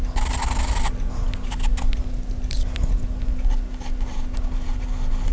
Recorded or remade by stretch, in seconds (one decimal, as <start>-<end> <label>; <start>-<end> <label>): 0.0-5.3 recorded